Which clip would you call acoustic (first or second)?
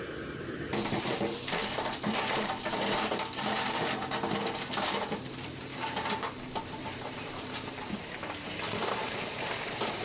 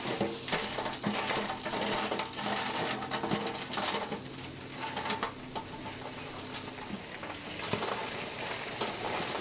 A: second